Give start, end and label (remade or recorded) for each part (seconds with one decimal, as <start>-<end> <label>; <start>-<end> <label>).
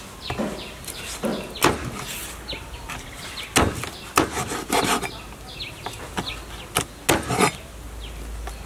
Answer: 0.0-8.7 recorded